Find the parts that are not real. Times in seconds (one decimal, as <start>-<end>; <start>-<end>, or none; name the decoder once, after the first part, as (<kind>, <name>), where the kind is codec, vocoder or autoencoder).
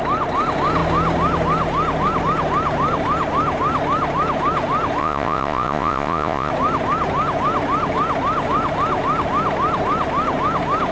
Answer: 5.0-6.5 (vocoder, Vocos)